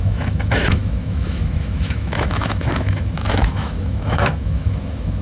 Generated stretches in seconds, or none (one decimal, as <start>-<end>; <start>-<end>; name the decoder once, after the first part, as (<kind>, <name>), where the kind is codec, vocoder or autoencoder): 0.0-5.2 (autoencoder, DAC-VAE)